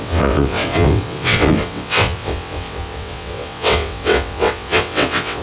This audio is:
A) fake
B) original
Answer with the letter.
A